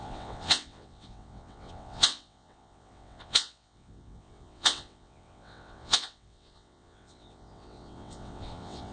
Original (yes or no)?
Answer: no